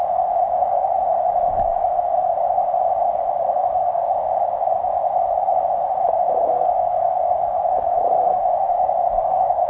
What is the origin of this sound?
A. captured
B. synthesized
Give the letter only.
B